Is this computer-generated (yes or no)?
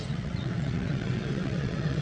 yes